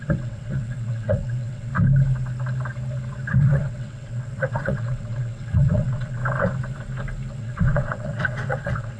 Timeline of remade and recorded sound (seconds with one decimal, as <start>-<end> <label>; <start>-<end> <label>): 0.0-1.7 remade; 1.7-3.3 recorded; 3.3-6.2 remade; 6.2-7.4 recorded; 7.4-9.0 remade